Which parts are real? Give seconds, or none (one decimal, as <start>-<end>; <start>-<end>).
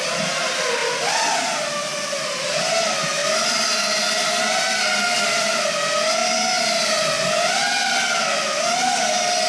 0.0-0.8; 1.3-3.2; 4.0-9.5